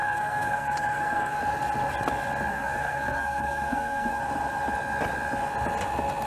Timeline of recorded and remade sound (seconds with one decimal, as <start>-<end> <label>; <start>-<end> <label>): 0.0-1.4 remade; 1.4-2.5 recorded; 2.5-4.2 remade; 4.2-6.3 recorded